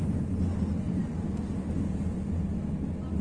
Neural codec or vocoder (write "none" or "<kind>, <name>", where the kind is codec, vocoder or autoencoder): none